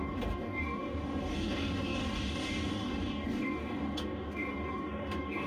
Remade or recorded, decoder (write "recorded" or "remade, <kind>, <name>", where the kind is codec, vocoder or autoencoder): remade, codec, DAC